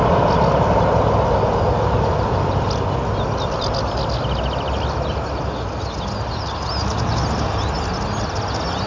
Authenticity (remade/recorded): recorded